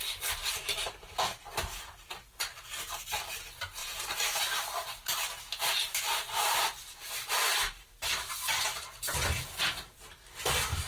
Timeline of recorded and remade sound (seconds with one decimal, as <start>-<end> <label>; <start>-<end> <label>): 0.0-0.4 recorded; 0.4-1.0 remade; 1.0-3.8 recorded; 3.8-9.0 remade; 9.0-10.9 recorded